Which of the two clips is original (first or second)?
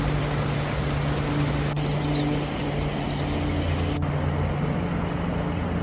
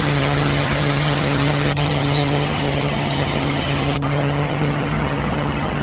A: first